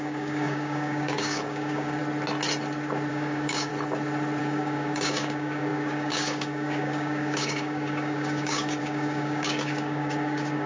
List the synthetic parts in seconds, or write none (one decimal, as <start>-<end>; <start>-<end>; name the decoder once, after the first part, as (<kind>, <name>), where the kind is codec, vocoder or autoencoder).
0.0-2.0 (codec, DAC); 3.1-3.7; 4.4-10.7